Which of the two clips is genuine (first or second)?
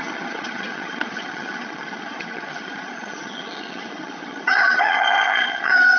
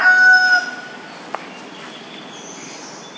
second